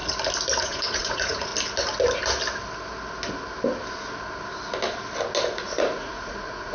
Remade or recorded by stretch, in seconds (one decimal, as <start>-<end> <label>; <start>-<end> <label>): 0.0-0.6 recorded; 0.6-1.5 remade; 1.5-5.4 recorded; 5.4-6.7 remade